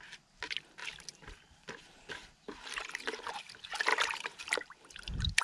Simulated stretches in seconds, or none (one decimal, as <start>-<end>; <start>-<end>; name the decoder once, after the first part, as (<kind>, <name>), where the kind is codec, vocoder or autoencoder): 0.8-3.3 (vocoder, BigVGAN v2); 3.9-5.4